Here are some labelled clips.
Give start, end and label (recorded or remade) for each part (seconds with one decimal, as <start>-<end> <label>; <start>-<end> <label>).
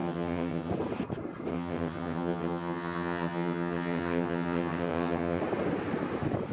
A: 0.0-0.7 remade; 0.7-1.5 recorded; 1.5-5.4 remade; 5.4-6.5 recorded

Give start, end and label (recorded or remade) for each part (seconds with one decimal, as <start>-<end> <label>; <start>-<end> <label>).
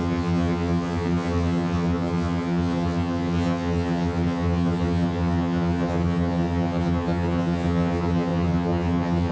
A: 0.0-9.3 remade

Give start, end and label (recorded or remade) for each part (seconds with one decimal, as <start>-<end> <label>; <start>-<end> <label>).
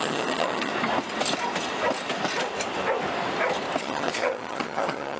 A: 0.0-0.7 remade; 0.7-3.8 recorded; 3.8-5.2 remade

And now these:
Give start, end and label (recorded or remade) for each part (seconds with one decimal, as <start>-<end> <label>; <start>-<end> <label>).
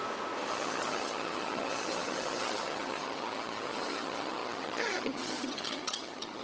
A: 0.0-0.5 recorded; 0.5-6.4 remade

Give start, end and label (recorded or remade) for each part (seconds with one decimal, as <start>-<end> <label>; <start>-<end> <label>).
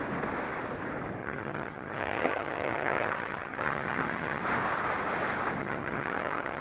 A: 0.0-1.2 recorded; 1.2-4.4 remade; 4.4-5.6 recorded; 5.6-6.6 remade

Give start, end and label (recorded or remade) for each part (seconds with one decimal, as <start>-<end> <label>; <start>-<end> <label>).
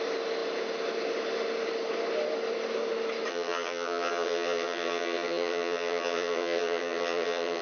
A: 0.0-3.3 recorded; 3.3-7.6 remade